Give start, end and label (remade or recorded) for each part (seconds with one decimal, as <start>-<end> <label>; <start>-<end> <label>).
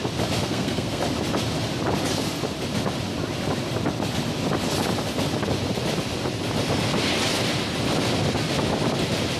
0.0-0.4 recorded; 0.4-1.0 remade; 1.0-9.4 recorded